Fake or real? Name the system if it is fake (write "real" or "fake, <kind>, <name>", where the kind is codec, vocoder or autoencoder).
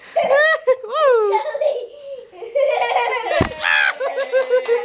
real